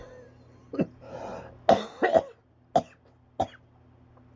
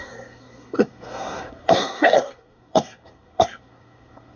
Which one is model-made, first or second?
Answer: second